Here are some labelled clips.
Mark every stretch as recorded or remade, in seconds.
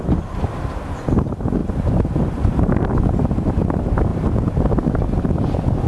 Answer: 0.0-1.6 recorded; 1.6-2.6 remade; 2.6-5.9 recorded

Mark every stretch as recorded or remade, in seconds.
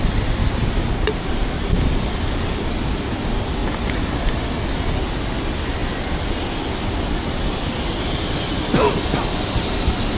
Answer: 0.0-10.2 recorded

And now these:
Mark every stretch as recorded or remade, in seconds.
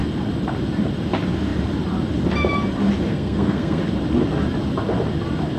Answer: 0.0-3.1 recorded; 3.1-3.8 remade; 3.8-5.6 recorded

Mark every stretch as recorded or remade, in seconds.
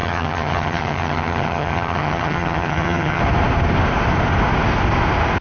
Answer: 0.0-3.2 remade; 3.2-5.4 recorded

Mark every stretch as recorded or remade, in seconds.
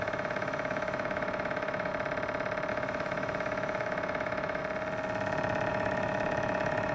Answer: 0.0-1.9 remade; 1.9-2.7 recorded; 2.7-4.6 remade; 4.6-5.7 recorded; 5.7-6.9 remade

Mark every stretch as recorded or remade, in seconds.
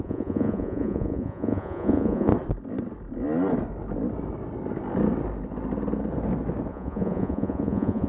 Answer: 0.0-2.3 remade; 2.3-6.7 recorded; 6.7-8.1 remade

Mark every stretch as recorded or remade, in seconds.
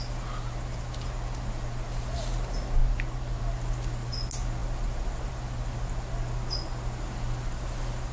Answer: 0.0-2.8 recorded; 2.8-3.4 remade; 3.4-8.1 recorded